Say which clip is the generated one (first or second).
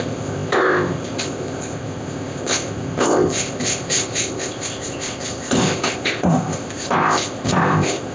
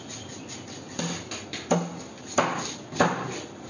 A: first